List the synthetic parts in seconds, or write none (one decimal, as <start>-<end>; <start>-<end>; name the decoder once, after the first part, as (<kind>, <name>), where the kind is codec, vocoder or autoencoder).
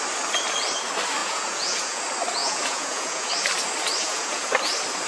1.2-2.0 (vocoder, Vocos); 2.4-3.3; 4.0-4.5